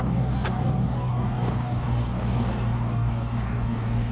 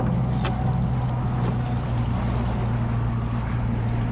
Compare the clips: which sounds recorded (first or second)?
second